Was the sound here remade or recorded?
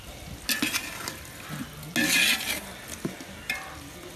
recorded